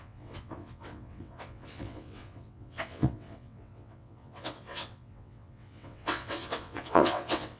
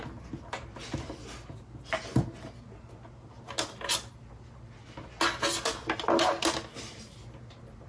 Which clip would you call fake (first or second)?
first